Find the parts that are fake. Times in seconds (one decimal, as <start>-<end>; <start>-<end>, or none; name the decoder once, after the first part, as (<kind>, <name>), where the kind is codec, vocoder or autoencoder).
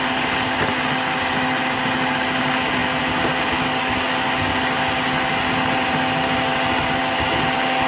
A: none